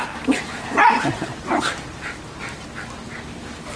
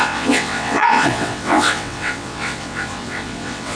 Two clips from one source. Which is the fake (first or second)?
second